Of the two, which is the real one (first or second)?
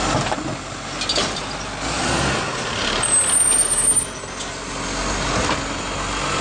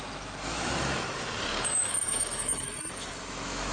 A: first